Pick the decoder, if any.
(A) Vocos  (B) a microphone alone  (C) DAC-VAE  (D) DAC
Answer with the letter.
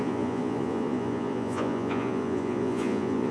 A